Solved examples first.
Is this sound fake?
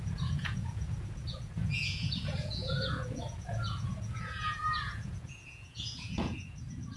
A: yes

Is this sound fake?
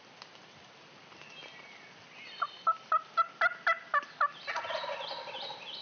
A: no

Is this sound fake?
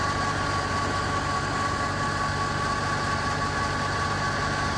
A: no